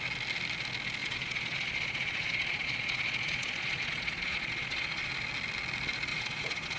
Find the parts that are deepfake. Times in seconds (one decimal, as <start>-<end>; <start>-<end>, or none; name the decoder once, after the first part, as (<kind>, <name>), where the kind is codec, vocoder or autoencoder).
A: 1.0-5.1 (vocoder, Vocos); 6.1-6.8